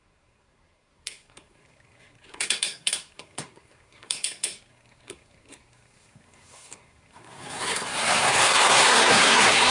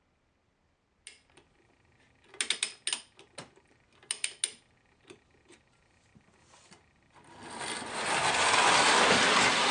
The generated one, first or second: first